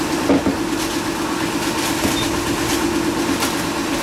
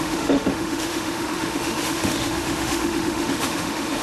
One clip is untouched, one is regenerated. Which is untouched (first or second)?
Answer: first